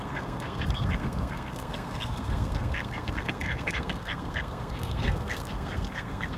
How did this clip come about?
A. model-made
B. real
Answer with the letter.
A